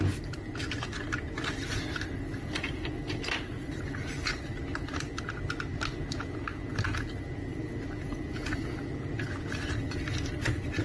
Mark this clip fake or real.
real